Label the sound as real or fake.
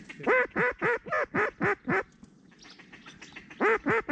real